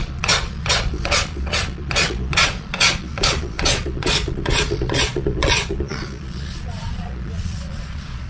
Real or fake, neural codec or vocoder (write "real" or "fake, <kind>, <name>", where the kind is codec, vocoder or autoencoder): fake, vocoder, Vocos